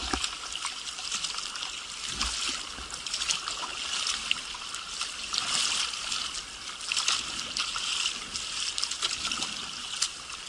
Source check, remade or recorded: recorded